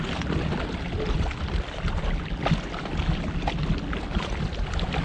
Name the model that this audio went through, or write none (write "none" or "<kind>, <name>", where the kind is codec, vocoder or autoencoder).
none